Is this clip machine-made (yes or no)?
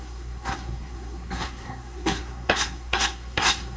yes